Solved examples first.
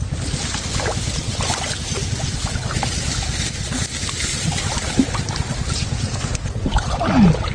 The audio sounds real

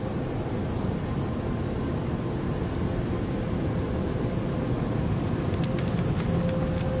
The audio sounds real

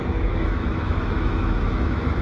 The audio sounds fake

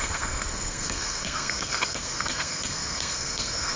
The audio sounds fake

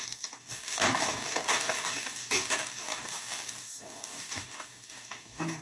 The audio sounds fake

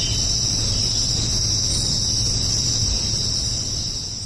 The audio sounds real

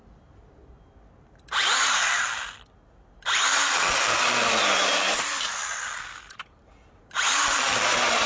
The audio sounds real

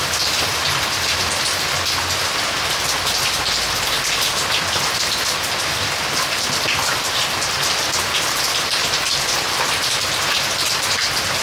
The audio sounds real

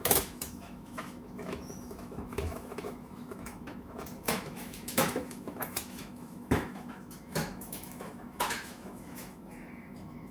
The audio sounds fake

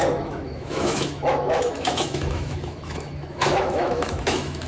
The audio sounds fake